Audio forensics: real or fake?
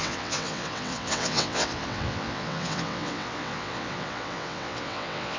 fake